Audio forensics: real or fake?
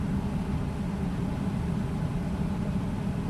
real